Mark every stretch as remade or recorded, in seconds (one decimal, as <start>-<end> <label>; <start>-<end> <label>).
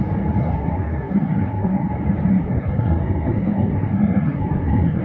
0.0-0.4 recorded; 0.4-1.9 remade; 1.9-2.3 recorded; 2.3-5.0 remade